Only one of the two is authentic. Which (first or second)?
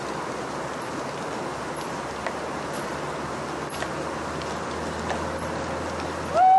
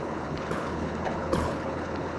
first